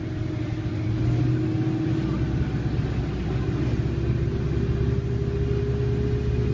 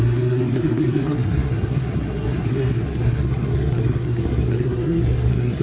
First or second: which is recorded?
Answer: first